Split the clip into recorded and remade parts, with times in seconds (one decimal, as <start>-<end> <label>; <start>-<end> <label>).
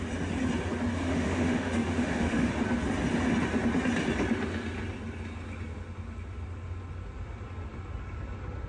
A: 0.0-0.9 recorded; 0.9-2.5 remade; 2.5-8.7 recorded